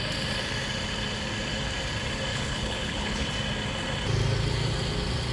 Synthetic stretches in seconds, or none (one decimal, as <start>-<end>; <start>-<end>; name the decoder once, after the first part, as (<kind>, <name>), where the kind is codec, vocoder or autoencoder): 2.3-3.3 (codec, HILCodec)